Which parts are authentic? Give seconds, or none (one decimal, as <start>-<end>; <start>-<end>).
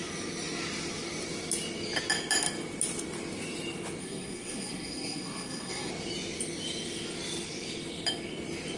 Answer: 0.0-4.0; 5.9-8.8